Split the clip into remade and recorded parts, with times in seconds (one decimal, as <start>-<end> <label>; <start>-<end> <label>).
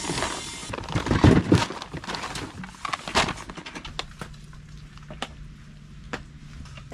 0.0-6.9 recorded